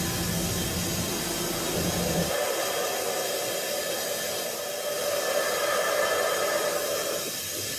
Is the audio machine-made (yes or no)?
no